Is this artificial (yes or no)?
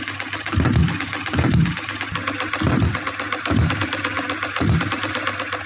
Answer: no